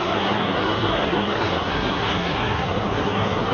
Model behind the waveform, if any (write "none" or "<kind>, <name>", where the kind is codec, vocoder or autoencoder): codec, SNAC